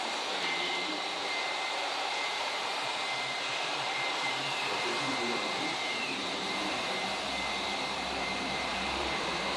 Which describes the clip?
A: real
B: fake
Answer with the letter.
B